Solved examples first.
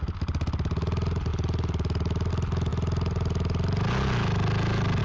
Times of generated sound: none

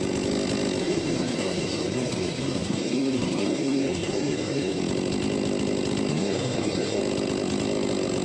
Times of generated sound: 0.8-4.8 (codec, SNAC); 6.1-7.0

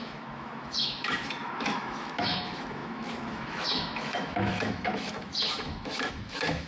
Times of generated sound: 0.0-6.7 (autoencoder, DAC-VAE)